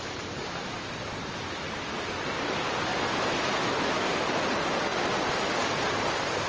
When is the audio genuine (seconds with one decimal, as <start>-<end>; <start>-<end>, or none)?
0.0-6.5